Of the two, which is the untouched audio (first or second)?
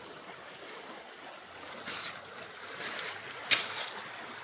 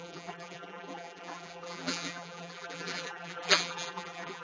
first